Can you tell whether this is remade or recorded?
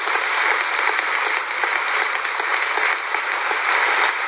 recorded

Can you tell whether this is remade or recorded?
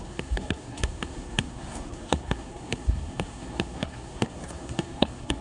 remade